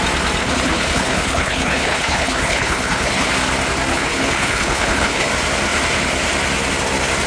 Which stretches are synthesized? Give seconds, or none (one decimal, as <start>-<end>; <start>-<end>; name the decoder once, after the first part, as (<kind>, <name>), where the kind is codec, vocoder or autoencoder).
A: 0.4-3.3 (codec, HILCodec); 3.9-5.3